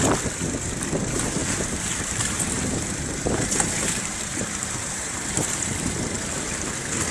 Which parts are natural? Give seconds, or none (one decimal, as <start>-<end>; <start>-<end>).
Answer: 0.0-1.4; 5.7-7.1